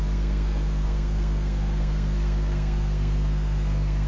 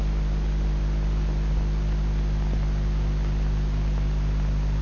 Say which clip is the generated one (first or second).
first